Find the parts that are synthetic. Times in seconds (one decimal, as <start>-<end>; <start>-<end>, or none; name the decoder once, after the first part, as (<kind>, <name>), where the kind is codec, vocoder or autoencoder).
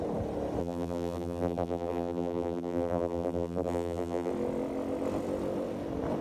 0.6-4.3 (vocoder, BigVGAN v2)